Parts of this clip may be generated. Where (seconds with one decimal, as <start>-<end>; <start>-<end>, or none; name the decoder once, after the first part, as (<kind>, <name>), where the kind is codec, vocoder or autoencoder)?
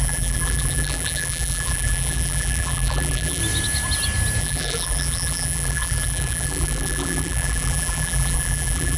0.0-3.4 (vocoder, BigVGAN v2); 4.4-9.0